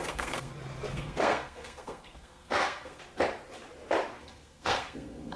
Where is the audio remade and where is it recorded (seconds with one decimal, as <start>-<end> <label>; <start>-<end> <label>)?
0.0-0.5 remade; 0.5-0.9 recorded; 0.9-3.0 remade; 3.0-4.2 recorded; 4.2-5.4 remade